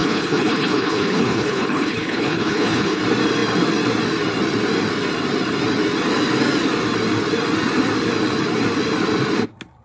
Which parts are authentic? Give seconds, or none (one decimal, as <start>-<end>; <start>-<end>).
3.0-9.8